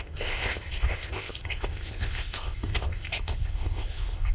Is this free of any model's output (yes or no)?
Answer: no